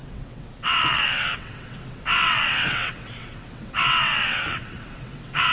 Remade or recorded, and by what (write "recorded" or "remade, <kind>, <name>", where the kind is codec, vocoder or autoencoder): remade, vocoder, WaveNeXt